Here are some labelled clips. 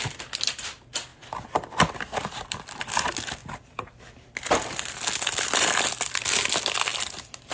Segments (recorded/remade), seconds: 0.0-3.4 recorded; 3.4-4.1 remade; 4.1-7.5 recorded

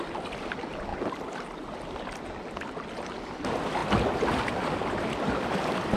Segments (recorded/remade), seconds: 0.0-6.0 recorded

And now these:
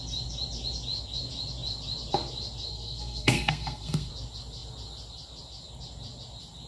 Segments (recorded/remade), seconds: 0.0-2.7 recorded; 2.7-4.1 remade; 4.1-6.7 recorded